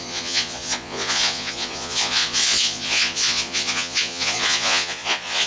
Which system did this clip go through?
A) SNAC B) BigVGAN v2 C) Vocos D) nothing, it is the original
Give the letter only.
C